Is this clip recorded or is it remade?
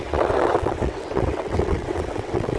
remade